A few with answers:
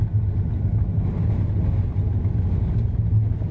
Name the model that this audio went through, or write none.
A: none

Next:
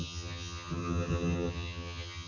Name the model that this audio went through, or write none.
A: vocoder, HiFi-GAN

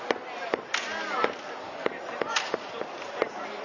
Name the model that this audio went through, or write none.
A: none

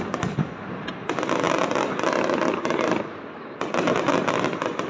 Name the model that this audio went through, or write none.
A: none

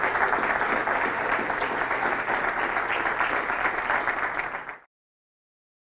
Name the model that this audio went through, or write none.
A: none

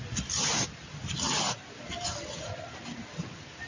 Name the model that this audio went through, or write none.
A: none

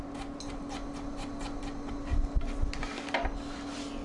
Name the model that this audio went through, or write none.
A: none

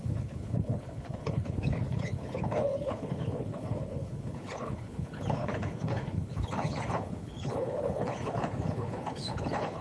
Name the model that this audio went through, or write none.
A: codec, HILCodec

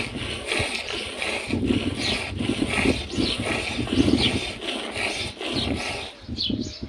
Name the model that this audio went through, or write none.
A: none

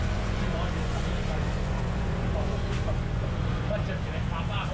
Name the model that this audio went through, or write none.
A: vocoder, Vocos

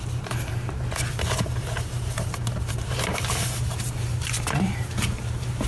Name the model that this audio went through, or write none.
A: vocoder, BigVGAN v2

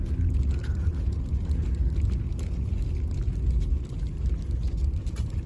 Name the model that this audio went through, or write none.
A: none